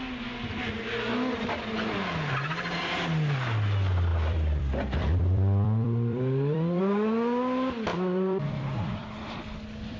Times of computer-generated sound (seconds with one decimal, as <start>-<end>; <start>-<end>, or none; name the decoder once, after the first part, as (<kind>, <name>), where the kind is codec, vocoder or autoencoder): 4.1-6.8 (vocoder, BigVGAN v2); 7.9-8.6; 9.0-10.0